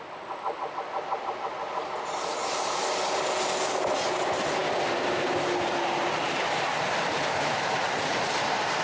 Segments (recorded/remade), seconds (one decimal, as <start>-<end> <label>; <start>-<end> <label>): 0.0-8.8 recorded